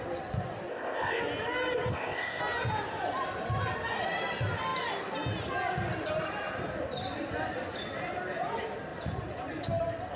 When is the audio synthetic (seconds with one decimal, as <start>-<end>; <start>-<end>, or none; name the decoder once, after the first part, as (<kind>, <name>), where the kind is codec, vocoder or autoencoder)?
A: 0.7-1.2 (codec, ZipCodec); 1.9-2.4